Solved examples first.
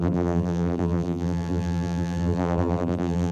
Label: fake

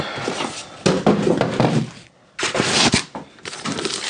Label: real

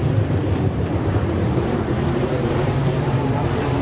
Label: fake